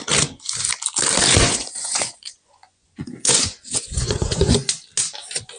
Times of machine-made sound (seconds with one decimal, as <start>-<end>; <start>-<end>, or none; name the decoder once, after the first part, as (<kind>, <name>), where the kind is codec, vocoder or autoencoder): 1.4-4.8 (vocoder, Vocos)